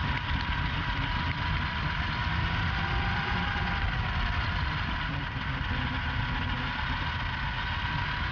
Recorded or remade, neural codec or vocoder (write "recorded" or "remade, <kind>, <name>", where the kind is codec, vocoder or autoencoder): recorded